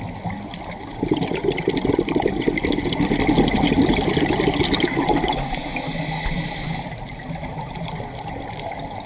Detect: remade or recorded recorded